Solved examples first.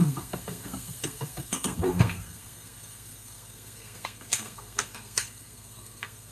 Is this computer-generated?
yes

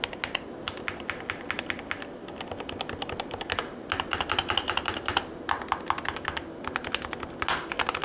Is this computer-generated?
no